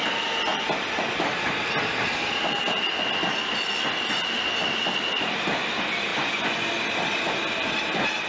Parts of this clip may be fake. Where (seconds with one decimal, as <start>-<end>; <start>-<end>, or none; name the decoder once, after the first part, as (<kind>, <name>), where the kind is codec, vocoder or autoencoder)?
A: 6.1-6.7 (vocoder, Vocos)